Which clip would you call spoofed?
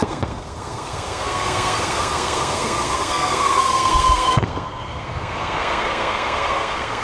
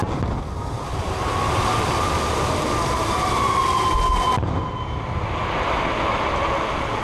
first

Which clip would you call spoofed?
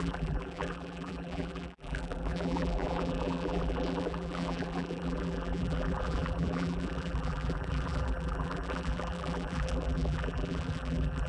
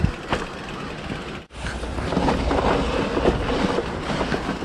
first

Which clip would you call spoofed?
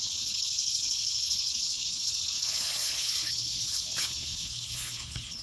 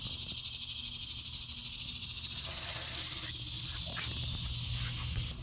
first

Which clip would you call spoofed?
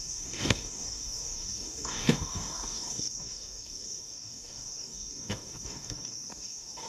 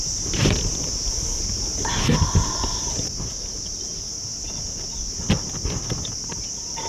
first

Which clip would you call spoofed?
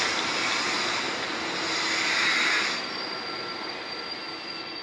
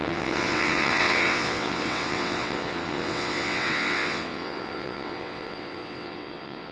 second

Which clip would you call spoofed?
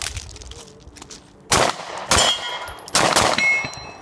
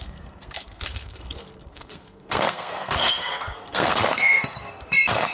second